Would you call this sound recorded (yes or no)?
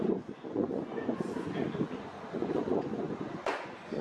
no